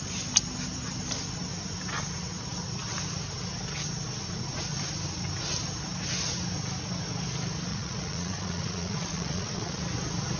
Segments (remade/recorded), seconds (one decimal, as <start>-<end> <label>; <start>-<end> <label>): 0.0-7.7 recorded; 7.7-9.8 remade; 9.8-10.4 recorded